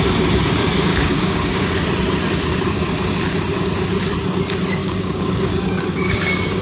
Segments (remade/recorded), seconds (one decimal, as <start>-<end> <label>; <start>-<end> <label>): 0.0-0.9 recorded; 0.9-1.7 remade; 1.7-4.8 recorded; 4.8-6.6 remade